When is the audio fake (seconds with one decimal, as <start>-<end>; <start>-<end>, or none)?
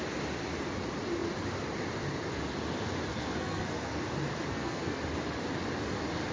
3.1-4.0; 4.5-5.0